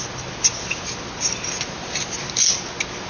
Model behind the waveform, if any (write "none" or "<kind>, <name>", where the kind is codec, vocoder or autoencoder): none